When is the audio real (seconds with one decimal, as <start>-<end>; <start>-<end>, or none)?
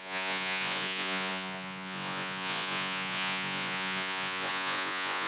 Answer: none